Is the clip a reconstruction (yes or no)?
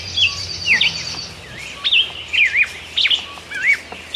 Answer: no